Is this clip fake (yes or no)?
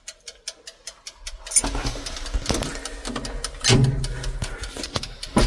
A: no